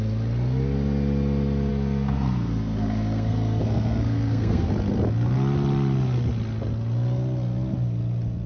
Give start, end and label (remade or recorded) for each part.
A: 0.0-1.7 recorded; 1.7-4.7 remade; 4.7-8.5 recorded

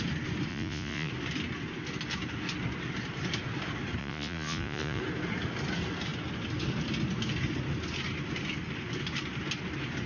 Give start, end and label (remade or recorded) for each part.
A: 0.0-0.5 recorded; 0.5-1.1 remade; 1.1-4.0 recorded; 4.0-5.0 remade; 5.0-10.1 recorded